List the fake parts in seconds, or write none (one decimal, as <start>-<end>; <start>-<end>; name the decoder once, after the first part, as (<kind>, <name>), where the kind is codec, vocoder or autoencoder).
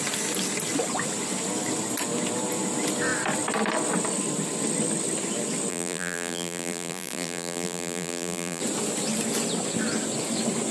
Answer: 5.7-8.6 (vocoder, BigVGAN v2)